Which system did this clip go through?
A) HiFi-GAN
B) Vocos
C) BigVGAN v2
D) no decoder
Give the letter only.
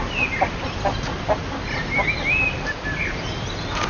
D